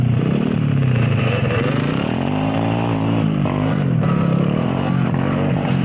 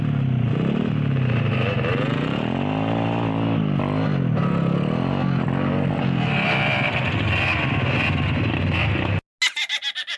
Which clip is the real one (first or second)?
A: second